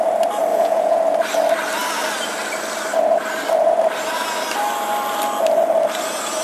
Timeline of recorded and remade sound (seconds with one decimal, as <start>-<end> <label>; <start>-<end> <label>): 0.0-0.5 recorded; 0.5-1.0 remade; 1.0-6.4 recorded